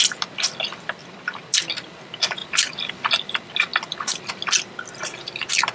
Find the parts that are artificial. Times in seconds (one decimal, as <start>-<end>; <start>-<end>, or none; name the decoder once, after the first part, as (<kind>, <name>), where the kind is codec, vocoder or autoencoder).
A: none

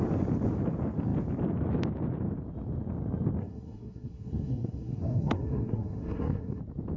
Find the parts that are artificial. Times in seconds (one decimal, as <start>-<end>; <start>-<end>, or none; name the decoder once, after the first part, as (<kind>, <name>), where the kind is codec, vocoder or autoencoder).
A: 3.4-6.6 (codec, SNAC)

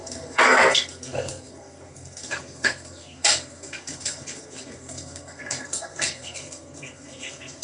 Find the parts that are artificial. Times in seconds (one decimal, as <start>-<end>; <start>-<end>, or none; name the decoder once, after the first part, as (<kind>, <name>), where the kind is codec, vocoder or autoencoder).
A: 0.0-7.6 (codec, SNAC)

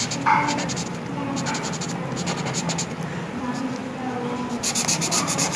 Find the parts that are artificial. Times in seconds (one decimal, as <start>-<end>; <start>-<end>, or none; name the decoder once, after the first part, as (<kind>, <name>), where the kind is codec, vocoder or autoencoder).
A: none